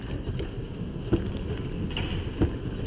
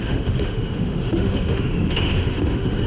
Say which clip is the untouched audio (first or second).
first